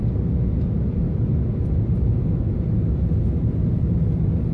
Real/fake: real